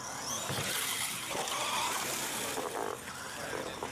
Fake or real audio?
real